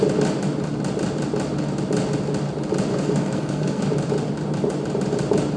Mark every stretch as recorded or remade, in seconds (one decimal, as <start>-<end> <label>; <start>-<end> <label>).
0.0-2.9 recorded; 2.9-3.8 remade; 3.8-5.6 recorded